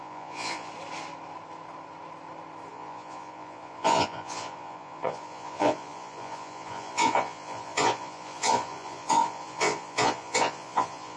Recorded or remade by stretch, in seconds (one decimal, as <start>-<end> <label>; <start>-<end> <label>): 0.0-0.7 remade; 0.7-2.7 recorded; 2.7-11.2 remade

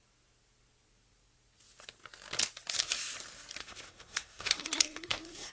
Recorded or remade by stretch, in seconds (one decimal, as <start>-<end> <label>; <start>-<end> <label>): 0.0-3.6 recorded; 3.6-5.5 remade